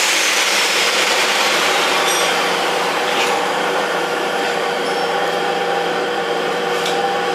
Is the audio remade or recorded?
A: remade